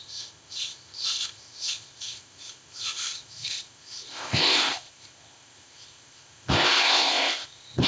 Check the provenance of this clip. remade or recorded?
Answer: remade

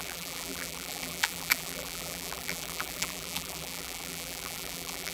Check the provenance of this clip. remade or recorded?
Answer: remade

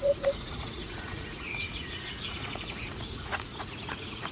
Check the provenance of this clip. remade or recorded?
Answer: remade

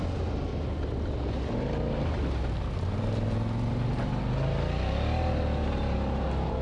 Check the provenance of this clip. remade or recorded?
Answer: recorded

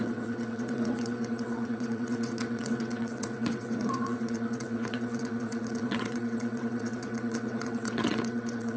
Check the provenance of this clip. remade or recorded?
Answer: remade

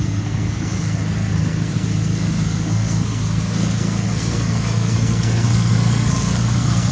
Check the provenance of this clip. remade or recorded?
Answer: remade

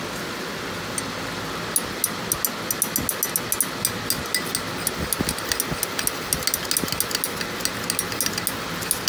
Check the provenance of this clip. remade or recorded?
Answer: recorded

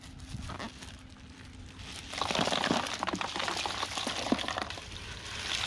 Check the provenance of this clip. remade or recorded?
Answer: recorded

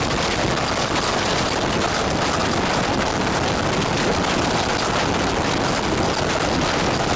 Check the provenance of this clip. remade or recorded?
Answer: recorded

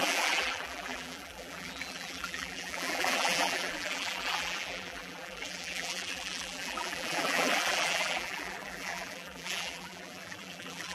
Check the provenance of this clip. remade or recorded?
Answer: remade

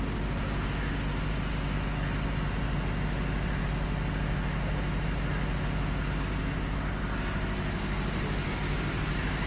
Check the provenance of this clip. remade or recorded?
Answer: recorded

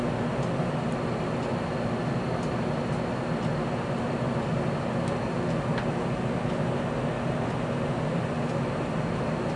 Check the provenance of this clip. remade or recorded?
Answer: recorded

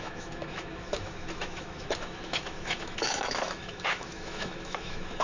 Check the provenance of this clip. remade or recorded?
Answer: remade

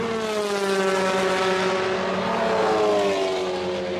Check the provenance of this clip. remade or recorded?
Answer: recorded